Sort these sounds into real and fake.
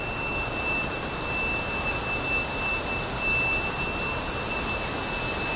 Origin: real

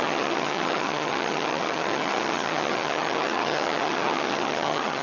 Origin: fake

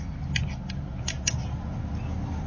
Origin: real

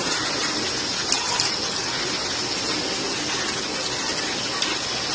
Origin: real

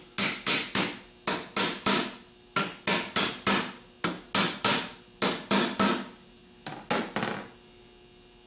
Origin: real